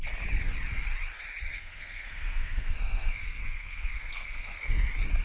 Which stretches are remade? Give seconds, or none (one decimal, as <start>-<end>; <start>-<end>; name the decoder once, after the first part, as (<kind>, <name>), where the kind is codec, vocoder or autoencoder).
1.5-4.6 (codec, SNAC)